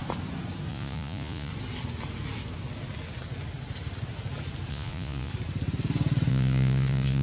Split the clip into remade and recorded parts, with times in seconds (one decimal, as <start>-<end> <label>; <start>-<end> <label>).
0.0-0.7 recorded; 0.7-1.5 remade; 1.5-4.7 recorded; 4.7-5.3 remade; 5.3-6.3 recorded; 6.3-7.2 remade